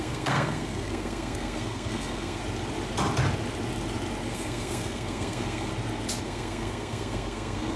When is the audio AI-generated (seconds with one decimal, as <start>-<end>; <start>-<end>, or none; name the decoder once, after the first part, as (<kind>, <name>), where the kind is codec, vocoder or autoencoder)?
0.0-2.4 (codec, SNAC); 4.2-5.7; 6.2-7.8